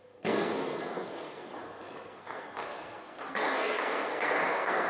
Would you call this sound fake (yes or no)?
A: yes